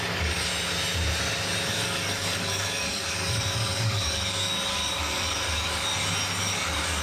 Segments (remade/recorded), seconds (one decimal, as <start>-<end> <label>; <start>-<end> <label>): 0.0-0.5 remade; 0.5-1.7 recorded; 1.7-5.9 remade; 5.9-6.4 recorded; 6.4-7.0 remade